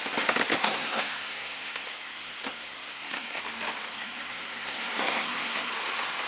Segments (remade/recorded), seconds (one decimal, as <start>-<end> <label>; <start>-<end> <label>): 0.0-0.5 recorded; 0.5-3.4 remade; 3.4-3.9 recorded; 3.9-5.7 remade; 5.7-6.3 recorded